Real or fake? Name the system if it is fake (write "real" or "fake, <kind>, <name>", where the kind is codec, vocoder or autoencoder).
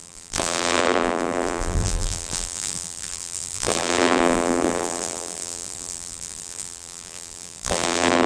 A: fake, vocoder, BigVGAN v2